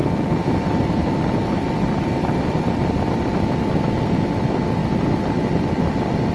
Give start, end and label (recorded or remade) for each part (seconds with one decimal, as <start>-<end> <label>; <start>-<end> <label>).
0.0-3.4 remade; 3.4-4.8 recorded; 4.8-6.3 remade